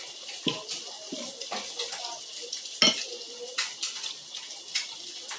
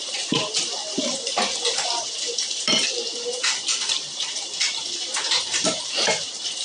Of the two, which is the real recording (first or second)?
first